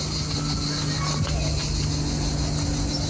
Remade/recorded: recorded